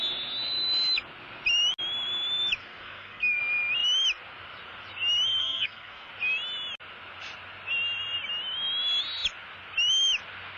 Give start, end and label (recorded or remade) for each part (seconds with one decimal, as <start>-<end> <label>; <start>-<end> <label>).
0.0-2.6 recorded; 2.6-3.4 remade; 3.4-5.4 recorded; 5.4-6.1 remade; 6.1-10.6 recorded